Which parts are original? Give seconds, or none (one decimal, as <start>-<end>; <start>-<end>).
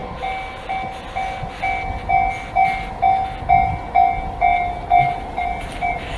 0.0-6.2